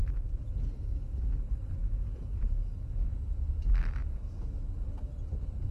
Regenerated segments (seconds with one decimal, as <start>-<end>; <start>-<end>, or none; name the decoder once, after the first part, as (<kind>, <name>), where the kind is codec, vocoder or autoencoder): 0.0-1.3 (vocoder, Vocos); 1.8-3.1